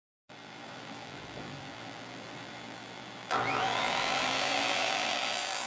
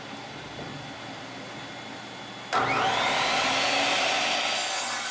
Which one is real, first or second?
second